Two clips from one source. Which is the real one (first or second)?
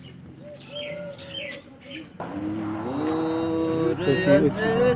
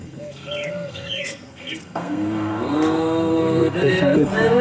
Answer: first